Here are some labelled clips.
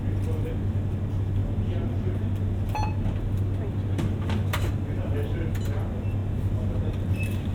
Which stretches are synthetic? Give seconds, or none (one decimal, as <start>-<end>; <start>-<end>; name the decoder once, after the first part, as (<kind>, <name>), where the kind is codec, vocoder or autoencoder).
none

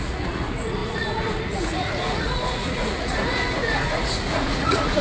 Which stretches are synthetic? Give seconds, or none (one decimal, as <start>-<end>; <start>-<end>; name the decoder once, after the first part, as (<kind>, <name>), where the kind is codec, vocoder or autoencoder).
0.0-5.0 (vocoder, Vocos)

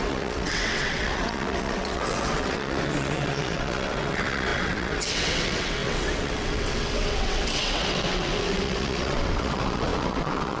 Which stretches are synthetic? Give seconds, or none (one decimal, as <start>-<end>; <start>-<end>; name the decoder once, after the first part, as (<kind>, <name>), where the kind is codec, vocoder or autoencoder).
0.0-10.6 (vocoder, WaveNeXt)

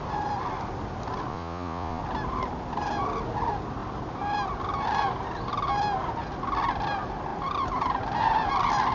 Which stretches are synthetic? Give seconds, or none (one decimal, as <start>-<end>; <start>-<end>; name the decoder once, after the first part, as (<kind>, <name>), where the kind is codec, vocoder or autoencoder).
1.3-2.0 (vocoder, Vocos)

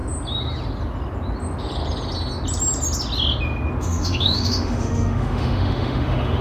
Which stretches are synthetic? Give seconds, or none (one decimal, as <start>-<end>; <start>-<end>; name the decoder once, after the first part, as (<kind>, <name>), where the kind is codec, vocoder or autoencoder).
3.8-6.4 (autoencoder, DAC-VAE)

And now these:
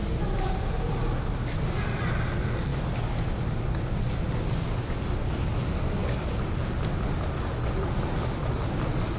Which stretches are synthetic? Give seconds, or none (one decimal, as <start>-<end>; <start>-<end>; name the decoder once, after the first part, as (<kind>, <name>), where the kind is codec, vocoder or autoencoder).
none

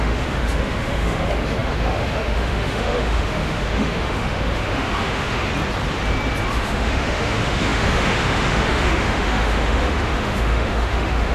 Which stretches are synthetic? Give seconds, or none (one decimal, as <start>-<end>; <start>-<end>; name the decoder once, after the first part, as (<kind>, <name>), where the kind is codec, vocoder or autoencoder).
0.0-5.5 (autoencoder, DAC-VAE); 6.5-11.3

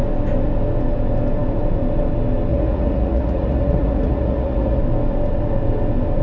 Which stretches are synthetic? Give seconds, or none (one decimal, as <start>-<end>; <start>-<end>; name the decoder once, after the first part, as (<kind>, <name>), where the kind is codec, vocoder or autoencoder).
2.5-4.8 (vocoder, Vocos)